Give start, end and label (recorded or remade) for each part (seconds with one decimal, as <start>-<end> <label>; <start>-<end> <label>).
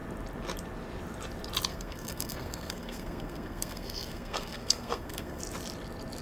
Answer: 0.0-1.7 recorded; 1.7-5.4 remade; 5.4-6.2 recorded